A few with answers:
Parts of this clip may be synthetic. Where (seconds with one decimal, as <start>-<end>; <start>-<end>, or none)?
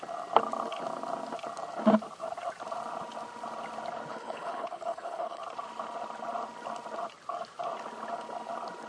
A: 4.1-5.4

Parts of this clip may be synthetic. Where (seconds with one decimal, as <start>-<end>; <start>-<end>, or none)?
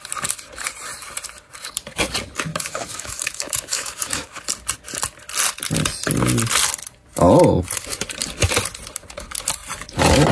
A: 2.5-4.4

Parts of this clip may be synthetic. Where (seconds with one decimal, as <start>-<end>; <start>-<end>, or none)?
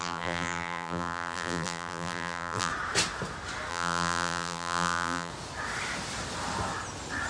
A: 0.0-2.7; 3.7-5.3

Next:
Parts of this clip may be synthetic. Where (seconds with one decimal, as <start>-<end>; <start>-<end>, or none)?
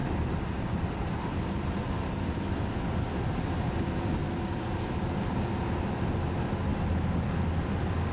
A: none